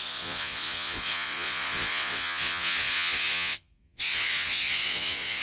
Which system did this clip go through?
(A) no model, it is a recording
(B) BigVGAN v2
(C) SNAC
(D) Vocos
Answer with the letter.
D